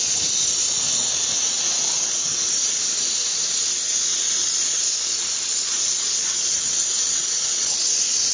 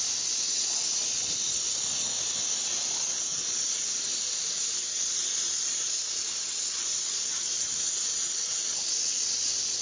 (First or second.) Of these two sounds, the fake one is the second